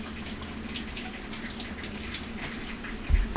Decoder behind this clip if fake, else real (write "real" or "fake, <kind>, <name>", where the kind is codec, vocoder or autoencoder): real